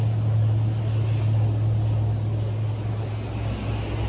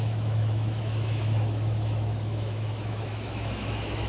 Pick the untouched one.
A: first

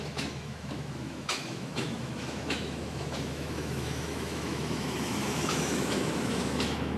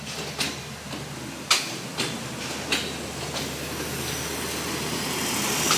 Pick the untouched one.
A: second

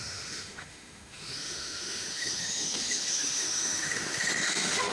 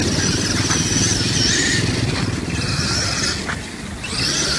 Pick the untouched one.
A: second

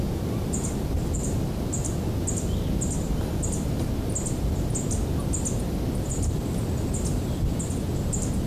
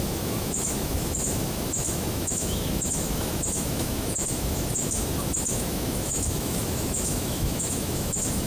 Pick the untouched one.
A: first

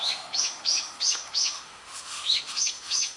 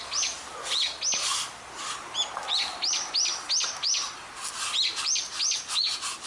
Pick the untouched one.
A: second